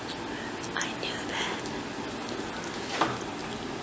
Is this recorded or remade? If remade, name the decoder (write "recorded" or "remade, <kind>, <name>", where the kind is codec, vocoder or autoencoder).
recorded